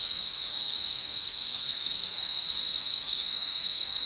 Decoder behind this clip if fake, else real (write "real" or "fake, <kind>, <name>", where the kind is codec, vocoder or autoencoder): fake, codec, SNAC